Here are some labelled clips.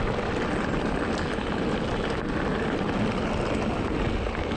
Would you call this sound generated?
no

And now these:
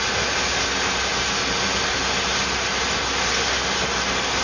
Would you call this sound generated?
no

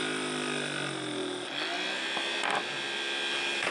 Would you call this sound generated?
no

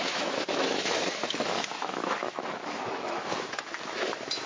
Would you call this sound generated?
yes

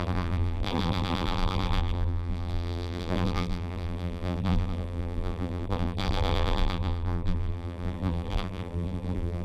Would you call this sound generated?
yes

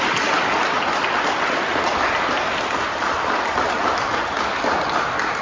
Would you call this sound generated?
no